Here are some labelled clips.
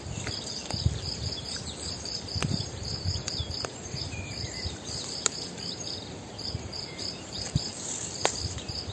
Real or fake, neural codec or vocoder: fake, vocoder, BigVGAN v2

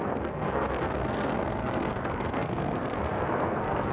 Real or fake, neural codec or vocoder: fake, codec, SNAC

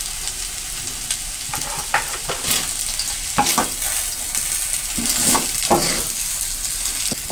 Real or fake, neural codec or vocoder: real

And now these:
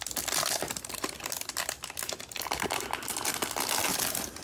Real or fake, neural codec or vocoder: real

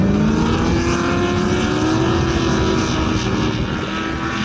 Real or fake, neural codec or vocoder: real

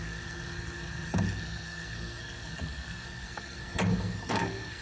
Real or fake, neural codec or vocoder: fake, codec, SNAC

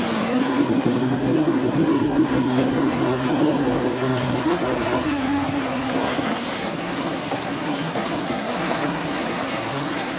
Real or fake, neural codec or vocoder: fake, codec, SNAC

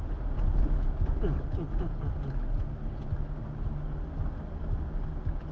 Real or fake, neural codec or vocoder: real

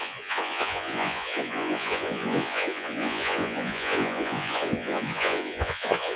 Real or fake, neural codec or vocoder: fake, vocoder, Vocos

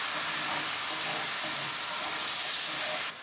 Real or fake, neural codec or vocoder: real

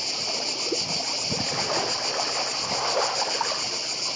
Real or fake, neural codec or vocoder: real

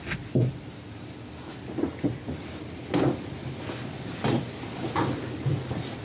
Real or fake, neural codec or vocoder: real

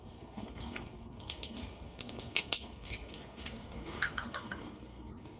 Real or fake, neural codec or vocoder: fake, codec, SNAC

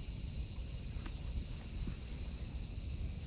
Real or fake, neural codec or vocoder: real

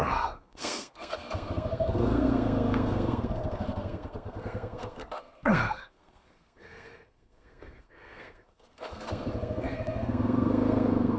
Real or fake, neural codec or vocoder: fake, codec, SNAC